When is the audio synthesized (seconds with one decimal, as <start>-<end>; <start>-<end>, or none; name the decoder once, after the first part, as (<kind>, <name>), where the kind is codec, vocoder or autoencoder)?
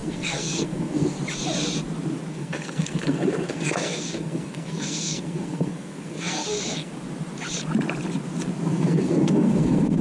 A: 0.0-1.2 (codec, SNAC); 2.3-6.9; 8.7-10.0